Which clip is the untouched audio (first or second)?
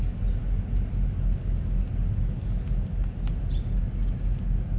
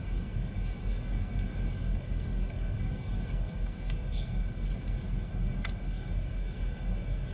first